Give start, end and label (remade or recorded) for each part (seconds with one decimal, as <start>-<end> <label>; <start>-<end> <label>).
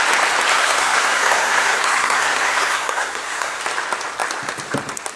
0.0-0.5 recorded; 0.5-3.6 remade; 3.6-5.2 recorded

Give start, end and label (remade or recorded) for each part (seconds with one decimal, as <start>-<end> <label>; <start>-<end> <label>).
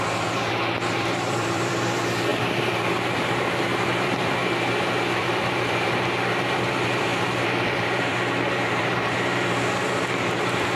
0.0-4.4 remade; 4.4-5.2 recorded; 5.2-10.8 remade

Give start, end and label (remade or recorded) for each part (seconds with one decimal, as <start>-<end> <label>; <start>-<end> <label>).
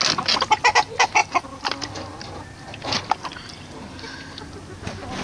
0.0-5.2 recorded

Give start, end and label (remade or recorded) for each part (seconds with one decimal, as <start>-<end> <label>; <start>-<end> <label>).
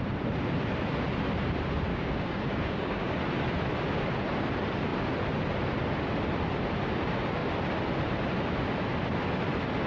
0.0-1.9 recorded; 1.9-3.2 remade; 3.2-9.9 recorded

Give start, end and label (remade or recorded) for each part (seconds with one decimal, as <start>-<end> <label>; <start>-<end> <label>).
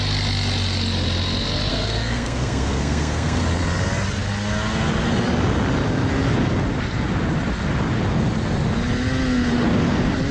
0.0-1.7 recorded; 1.7-3.4 remade; 3.4-10.3 recorded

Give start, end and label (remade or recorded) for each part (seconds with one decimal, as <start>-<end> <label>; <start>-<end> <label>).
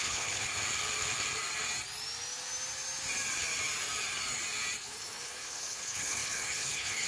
0.0-0.5 remade; 0.5-4.8 recorded; 4.8-7.1 remade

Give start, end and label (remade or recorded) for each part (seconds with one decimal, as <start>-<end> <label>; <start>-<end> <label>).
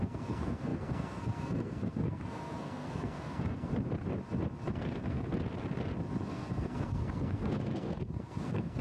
0.0-3.7 remade; 3.7-4.7 recorded; 4.7-5.3 remade; 5.3-6.3 recorded; 6.3-8.8 remade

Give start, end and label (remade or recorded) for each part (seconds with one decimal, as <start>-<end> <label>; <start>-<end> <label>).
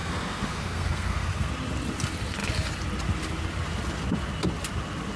0.0-1.5 remade; 1.5-5.2 recorded